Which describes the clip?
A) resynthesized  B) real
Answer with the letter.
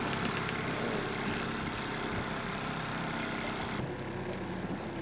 B